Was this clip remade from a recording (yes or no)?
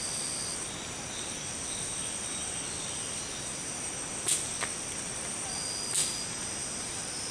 no